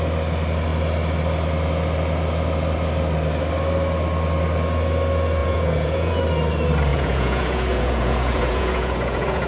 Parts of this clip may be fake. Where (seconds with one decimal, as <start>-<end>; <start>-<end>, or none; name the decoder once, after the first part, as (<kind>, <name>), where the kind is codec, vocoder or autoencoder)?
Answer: 5.4-6.2 (vocoder, Vocos); 6.9-9.5